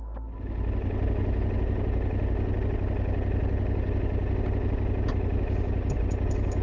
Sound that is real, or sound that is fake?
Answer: real